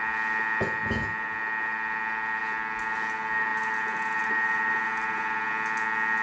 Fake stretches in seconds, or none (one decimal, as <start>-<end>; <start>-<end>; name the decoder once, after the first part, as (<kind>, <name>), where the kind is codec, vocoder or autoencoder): 3.5-5.5 (vocoder, BigVGAN v2)